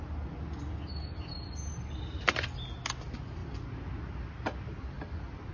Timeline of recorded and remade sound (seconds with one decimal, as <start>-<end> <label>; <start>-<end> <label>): 0.0-5.5 recorded